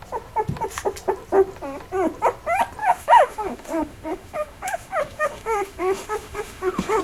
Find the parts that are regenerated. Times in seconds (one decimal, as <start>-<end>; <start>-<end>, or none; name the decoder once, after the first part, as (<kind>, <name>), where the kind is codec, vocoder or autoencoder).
2.8-7.0 (autoencoder, DAC-VAE)